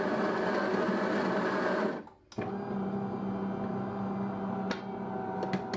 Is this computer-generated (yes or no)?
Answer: no